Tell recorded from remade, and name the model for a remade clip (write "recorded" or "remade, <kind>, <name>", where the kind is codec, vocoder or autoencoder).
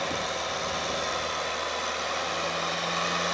recorded